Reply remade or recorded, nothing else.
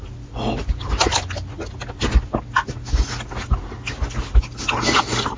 recorded